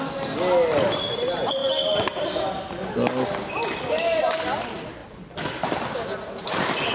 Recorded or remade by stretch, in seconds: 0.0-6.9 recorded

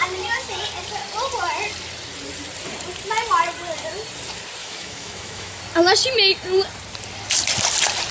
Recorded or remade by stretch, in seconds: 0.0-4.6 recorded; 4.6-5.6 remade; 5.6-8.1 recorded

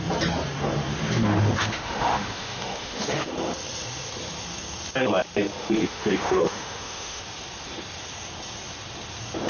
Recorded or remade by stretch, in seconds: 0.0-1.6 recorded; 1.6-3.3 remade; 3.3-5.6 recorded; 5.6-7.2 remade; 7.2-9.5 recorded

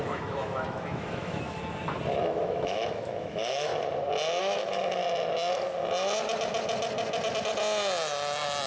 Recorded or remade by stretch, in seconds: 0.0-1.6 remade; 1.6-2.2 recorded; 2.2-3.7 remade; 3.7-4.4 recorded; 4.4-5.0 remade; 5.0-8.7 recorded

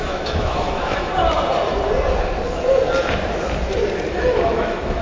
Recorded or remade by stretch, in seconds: 0.0-1.1 remade; 1.1-4.1 recorded; 4.1-5.0 remade

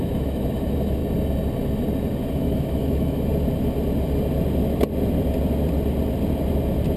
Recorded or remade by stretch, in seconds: 0.0-1.0 remade; 1.0-2.3 recorded; 2.3-3.3 remade; 3.3-7.0 recorded

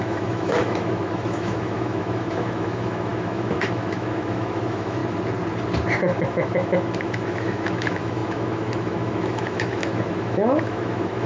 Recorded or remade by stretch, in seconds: 0.0-5.0 remade; 5.0-6.0 recorded; 6.0-11.3 remade